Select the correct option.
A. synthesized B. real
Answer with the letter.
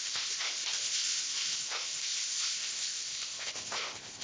A